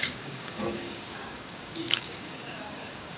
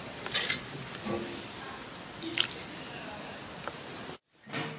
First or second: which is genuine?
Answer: second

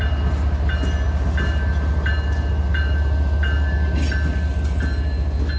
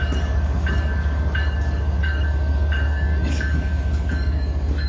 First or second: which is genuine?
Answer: first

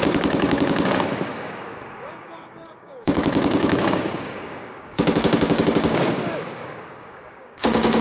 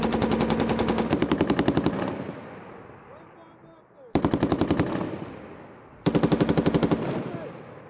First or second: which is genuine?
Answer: second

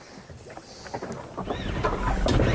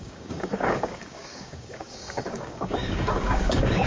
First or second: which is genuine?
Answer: first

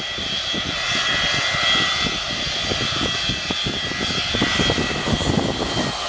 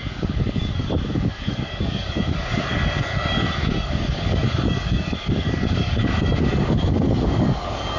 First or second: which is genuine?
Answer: first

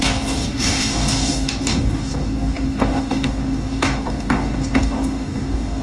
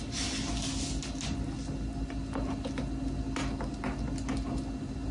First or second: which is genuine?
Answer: second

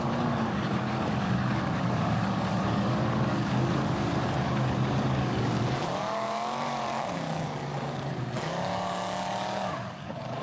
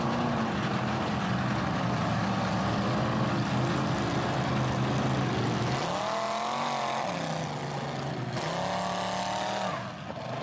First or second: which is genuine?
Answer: second